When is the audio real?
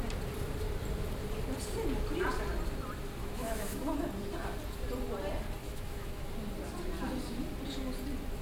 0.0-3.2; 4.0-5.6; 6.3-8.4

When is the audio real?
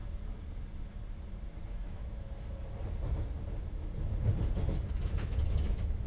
0.0-1.6; 2.0-4.9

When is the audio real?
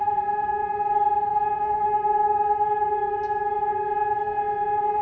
0.0-1.3; 3.7-5.0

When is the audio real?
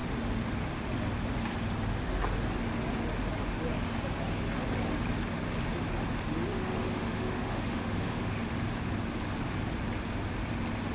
0.0-6.5; 8.4-10.9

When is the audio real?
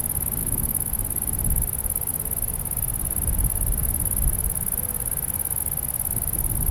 0.0-0.4; 0.9-6.7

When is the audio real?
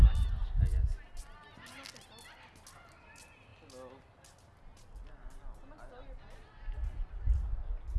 0.0-8.0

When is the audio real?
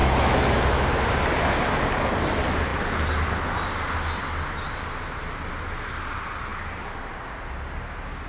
0.6-8.3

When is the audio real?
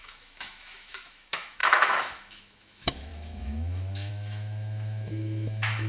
none